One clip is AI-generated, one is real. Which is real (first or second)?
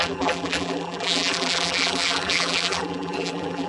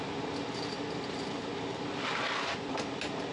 second